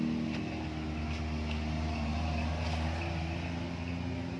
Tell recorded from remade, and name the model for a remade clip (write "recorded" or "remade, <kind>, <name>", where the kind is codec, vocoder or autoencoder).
recorded